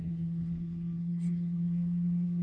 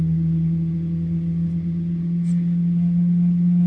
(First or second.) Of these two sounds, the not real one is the first